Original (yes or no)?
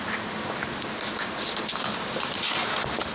yes